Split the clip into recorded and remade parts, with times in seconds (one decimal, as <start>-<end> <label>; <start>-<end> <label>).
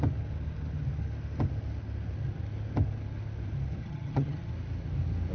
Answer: 0.0-3.8 recorded; 3.8-4.5 remade; 4.5-5.3 recorded